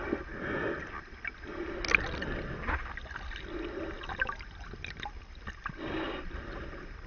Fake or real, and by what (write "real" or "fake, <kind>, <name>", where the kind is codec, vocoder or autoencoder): real